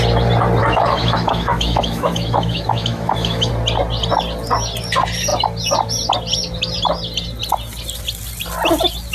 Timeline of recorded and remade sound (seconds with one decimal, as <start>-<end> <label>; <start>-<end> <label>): 0.0-0.6 recorded; 0.6-3.5 remade; 3.5-9.1 recorded

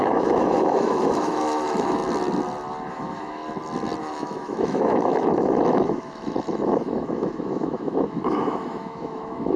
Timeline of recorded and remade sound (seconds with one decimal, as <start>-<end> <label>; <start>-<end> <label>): 0.0-2.0 remade; 2.0-2.9 recorded; 2.9-3.4 remade; 3.4-4.0 recorded; 4.0-9.6 remade

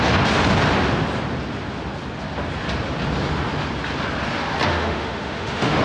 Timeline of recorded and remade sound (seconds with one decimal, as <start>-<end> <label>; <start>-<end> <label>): 0.0-4.7 recorded; 4.7-5.8 remade

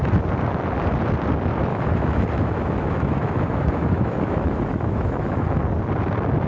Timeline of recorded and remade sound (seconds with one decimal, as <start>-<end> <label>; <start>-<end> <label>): 0.0-1.7 recorded; 1.7-5.6 remade; 5.6-6.5 recorded